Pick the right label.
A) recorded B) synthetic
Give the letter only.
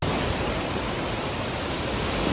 A